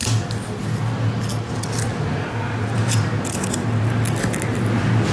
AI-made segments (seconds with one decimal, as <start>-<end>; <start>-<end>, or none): none